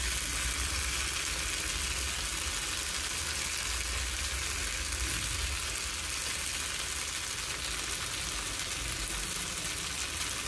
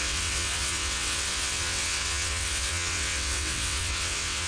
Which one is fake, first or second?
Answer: second